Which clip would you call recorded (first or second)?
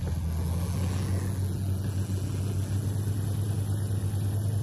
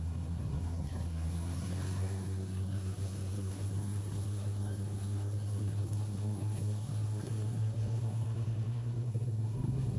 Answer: first